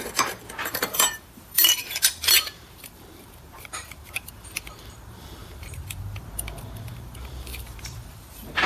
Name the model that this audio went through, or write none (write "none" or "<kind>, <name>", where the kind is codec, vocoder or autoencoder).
vocoder, BigVGAN v2